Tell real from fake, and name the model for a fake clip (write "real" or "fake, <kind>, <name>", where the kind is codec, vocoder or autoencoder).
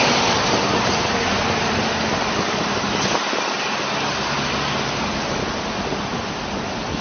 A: real